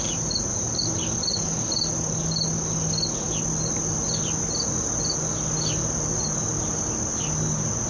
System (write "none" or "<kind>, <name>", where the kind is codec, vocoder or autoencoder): none